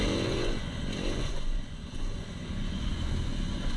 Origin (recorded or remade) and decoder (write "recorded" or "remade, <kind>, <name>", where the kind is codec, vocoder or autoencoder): remade, vocoder, Vocos